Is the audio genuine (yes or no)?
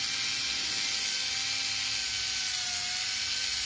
yes